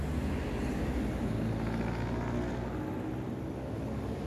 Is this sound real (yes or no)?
yes